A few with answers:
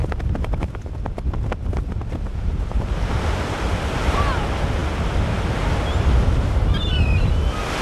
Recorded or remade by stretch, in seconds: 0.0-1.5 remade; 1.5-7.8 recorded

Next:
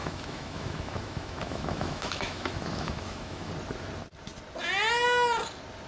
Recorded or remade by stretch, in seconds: 0.0-3.5 remade; 3.5-5.9 recorded